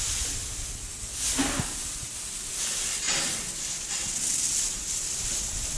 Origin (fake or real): real